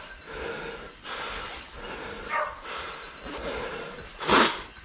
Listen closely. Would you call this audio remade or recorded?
recorded